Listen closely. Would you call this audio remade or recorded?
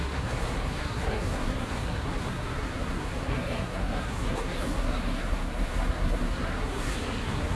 remade